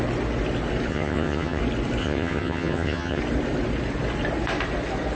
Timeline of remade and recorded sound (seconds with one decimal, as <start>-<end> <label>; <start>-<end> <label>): 0.0-0.9 recorded; 0.9-1.6 remade; 1.6-2.0 recorded; 2.0-3.2 remade; 3.2-5.1 recorded